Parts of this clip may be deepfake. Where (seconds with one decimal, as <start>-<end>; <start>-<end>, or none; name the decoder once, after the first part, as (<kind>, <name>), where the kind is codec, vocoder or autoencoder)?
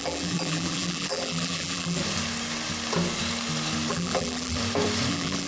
0.0-2.0 (vocoder, BigVGAN v2); 3.9-4.6; 5.1-5.5